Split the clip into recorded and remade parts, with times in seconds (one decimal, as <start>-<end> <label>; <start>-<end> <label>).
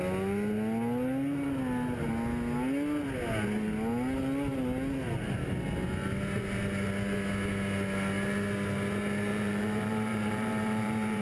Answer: 0.0-9.3 recorded; 9.3-11.2 remade